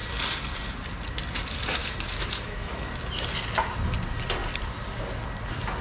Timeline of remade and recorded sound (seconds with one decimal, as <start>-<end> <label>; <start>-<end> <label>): 0.0-1.8 recorded; 1.8-2.9 remade; 2.9-5.8 recorded